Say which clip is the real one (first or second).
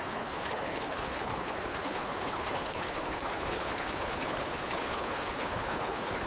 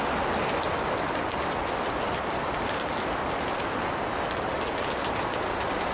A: second